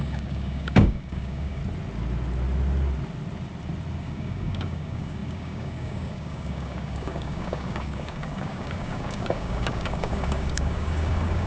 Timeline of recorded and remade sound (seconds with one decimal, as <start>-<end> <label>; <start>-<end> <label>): 0.0-1.6 remade; 1.6-4.0 recorded; 4.0-11.5 remade